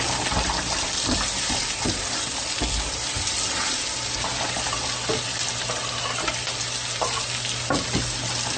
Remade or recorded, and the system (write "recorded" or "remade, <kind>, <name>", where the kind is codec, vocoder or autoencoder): recorded